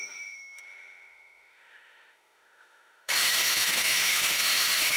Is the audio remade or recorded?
remade